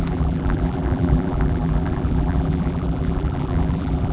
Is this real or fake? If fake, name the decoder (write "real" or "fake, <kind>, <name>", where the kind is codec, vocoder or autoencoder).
fake, vocoder, BigVGAN v2